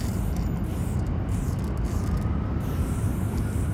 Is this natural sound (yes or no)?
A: yes